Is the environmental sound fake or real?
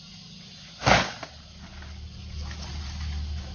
real